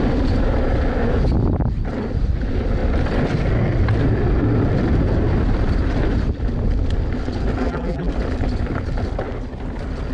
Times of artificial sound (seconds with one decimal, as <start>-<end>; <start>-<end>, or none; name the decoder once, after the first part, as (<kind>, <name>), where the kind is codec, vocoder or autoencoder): 7.6-8.1 (vocoder, BigVGAN v2)